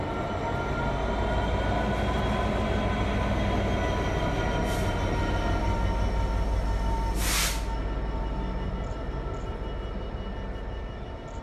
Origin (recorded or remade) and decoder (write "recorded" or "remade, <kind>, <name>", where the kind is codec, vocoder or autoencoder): recorded